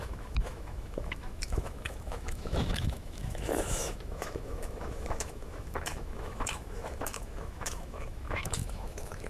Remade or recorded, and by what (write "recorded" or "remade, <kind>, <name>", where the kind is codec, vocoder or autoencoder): remade, autoencoder, DAC-VAE